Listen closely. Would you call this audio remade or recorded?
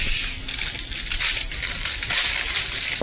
recorded